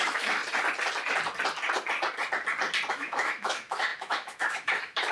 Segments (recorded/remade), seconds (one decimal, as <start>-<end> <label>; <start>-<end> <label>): 0.0-0.4 remade; 0.4-2.9 recorded; 2.9-5.1 remade